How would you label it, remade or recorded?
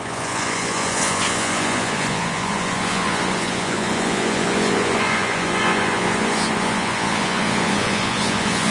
remade